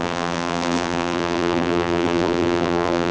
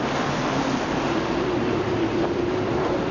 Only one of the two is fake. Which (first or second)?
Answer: first